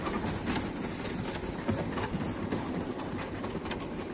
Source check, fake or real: real